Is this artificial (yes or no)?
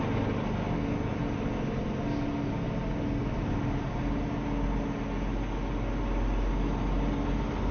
no